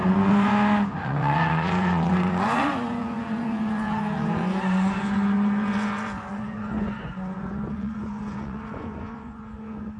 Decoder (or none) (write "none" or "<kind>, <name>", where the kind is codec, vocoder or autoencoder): vocoder, Vocos